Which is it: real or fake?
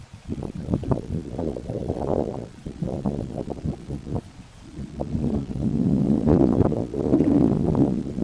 fake